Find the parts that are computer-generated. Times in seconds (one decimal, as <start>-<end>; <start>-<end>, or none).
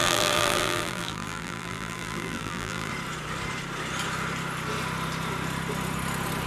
0.0-2.9